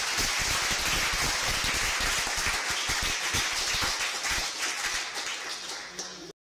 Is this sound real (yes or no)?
yes